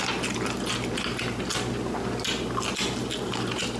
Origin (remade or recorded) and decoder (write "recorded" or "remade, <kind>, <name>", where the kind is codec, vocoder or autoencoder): recorded